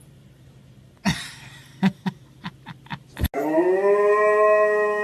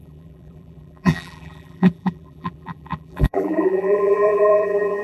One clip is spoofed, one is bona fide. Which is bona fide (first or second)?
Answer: first